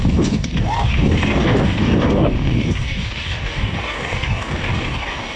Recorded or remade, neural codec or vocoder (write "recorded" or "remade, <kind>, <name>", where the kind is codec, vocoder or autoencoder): remade, codec, DAC